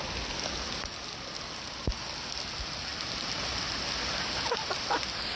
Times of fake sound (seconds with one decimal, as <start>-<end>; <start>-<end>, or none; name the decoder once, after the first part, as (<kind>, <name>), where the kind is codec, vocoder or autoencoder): none